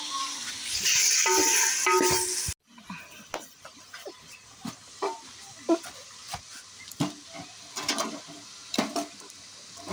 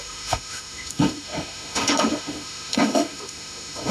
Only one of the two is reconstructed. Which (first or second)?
second